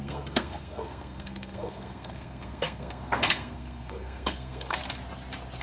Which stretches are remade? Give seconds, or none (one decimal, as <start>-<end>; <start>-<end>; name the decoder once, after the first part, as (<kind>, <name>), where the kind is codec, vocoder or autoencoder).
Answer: 0.0-4.8 (codec, SNAC)